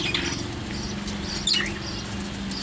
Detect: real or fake real